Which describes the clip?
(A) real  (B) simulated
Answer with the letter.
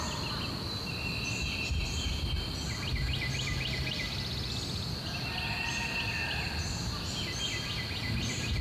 A